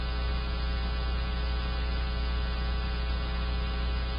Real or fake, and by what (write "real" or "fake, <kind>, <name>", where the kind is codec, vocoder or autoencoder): real